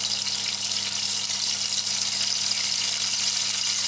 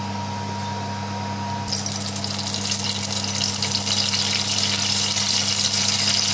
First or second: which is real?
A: second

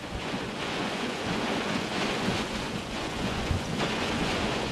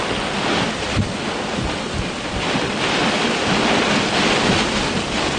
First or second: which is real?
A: second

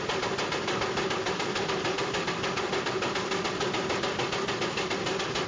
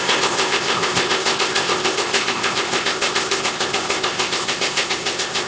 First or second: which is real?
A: first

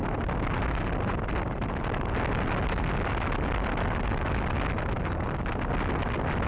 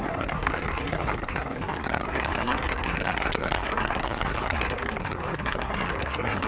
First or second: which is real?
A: first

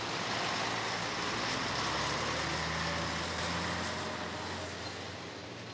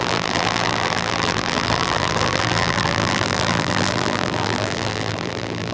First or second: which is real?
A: first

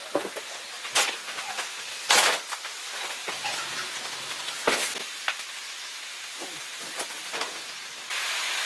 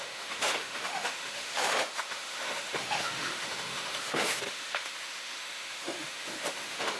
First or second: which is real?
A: first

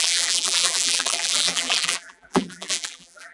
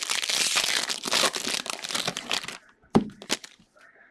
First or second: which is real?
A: second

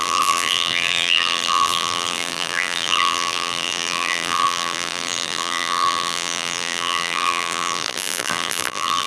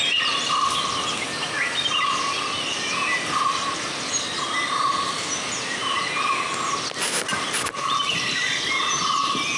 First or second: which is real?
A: second